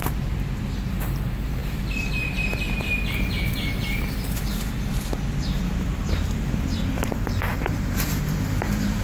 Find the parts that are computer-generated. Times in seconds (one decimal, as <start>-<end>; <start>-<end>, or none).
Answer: 0.0-9.0